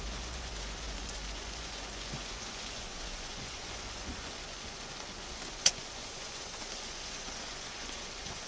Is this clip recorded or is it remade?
remade